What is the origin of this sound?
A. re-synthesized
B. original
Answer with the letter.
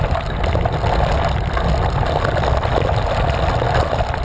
B